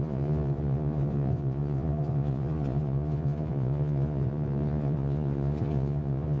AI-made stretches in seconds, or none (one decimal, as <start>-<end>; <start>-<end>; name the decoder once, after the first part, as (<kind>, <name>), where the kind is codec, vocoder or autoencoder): 0.0-6.4 (vocoder, Vocos)